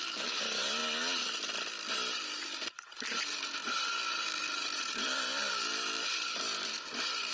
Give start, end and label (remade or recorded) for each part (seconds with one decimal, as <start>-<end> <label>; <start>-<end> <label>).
0.0-0.8 remade; 0.8-1.9 recorded; 1.9-7.3 remade